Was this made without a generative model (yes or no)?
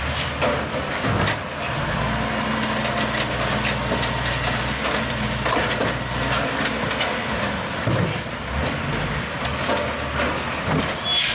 yes